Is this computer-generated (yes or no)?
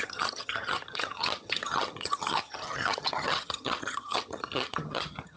yes